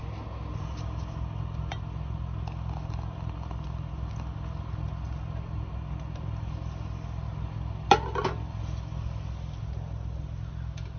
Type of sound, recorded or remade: recorded